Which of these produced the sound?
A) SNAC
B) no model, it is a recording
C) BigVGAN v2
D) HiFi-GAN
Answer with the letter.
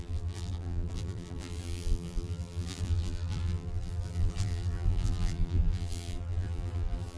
C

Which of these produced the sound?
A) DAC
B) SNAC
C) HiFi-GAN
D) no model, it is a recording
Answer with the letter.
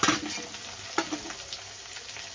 D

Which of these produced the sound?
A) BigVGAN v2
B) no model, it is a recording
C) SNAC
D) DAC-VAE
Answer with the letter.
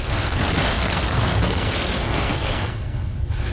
C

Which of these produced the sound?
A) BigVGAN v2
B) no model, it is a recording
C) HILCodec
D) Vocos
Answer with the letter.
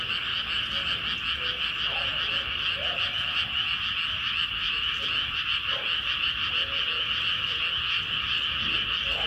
B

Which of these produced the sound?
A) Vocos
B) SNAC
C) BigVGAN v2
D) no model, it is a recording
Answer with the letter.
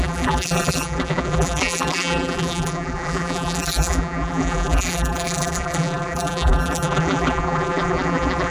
C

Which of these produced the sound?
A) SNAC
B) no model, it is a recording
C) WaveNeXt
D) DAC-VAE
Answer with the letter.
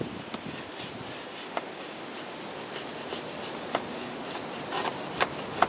B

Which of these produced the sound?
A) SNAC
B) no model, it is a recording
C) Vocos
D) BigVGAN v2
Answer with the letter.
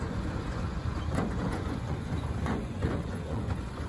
C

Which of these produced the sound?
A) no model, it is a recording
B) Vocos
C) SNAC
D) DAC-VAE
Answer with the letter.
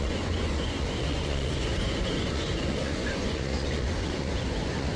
B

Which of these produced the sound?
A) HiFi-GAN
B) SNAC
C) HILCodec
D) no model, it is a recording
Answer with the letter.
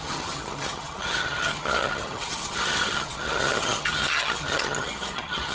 A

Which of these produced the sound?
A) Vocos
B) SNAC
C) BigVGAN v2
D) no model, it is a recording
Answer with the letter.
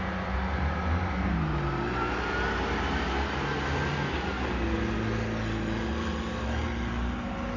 D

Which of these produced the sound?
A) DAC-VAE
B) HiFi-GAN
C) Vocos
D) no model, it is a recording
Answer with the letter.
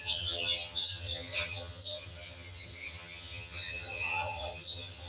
B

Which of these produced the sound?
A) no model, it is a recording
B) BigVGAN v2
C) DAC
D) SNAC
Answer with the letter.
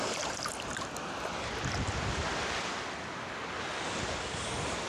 A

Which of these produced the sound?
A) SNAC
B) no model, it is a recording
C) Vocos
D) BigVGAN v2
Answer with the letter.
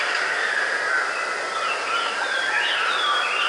B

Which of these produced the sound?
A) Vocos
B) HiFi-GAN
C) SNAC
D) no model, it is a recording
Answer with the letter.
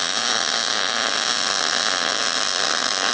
D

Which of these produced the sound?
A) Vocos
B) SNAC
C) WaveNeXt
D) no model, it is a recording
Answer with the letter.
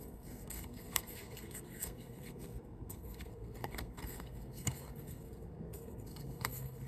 B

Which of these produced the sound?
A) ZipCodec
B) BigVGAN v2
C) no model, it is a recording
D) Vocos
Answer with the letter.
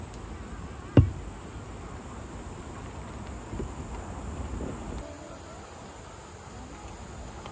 C